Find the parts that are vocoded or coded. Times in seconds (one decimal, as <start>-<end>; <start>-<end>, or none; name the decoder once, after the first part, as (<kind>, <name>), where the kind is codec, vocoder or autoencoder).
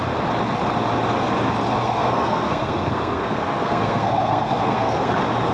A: 1.8-5.1 (codec, SNAC)